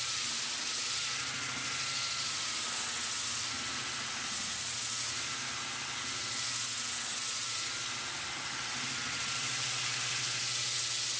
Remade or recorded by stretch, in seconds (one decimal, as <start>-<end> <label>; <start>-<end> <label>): 0.0-7.1 recorded; 7.1-8.2 remade; 8.2-11.2 recorded